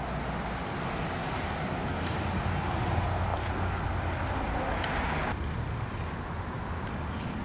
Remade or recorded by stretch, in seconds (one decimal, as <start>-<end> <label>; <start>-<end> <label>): 0.0-7.4 recorded

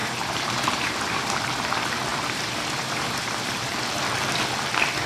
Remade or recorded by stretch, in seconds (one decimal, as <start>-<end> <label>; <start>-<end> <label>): 0.0-1.3 remade; 1.3-2.1 recorded; 2.1-3.8 remade; 3.8-5.1 recorded

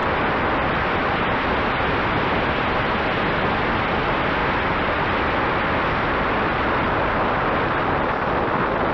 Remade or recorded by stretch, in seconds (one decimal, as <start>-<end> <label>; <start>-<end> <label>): 0.0-8.9 recorded

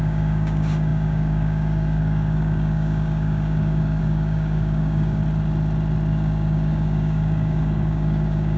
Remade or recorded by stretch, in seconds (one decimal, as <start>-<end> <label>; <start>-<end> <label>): 0.0-5.2 remade; 5.2-6.1 recorded; 6.1-8.6 remade

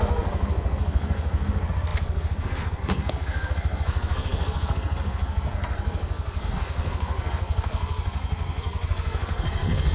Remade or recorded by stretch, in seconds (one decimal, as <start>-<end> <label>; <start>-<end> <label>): 0.0-9.9 remade